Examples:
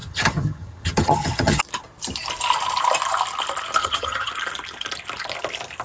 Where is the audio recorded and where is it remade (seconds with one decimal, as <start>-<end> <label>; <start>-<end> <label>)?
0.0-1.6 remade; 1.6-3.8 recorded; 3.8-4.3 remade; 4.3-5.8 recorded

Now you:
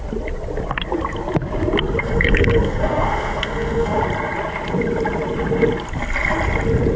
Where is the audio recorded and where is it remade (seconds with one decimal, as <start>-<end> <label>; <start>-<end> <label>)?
0.0-2.0 recorded; 2.0-4.0 remade; 4.0-7.0 recorded

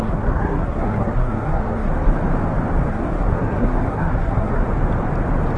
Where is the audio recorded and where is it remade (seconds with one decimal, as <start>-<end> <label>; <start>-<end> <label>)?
0.0-1.9 remade; 1.9-2.9 recorded; 2.9-4.6 remade; 4.6-5.6 recorded

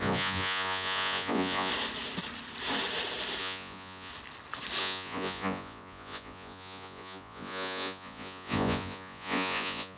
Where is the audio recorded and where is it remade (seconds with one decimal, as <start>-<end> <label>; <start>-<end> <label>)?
0.0-1.7 remade; 1.7-3.4 recorded; 3.4-4.1 remade; 4.1-4.8 recorded; 4.8-10.0 remade